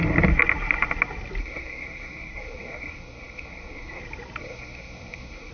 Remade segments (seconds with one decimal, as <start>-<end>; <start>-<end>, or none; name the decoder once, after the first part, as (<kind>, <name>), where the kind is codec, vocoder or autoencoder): 1.4-4.0 (codec, SNAC); 4.4-5.5